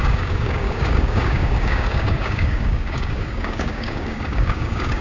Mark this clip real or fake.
fake